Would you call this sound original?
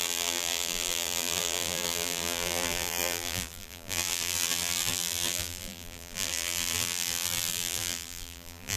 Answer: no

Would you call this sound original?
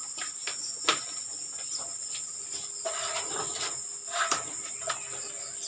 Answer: yes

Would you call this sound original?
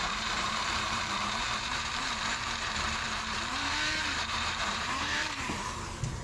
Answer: no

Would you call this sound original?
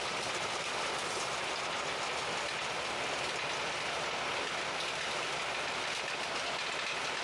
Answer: yes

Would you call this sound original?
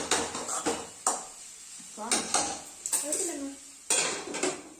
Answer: yes